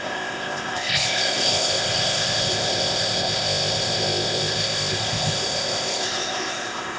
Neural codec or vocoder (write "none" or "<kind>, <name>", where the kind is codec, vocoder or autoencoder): codec, ZipCodec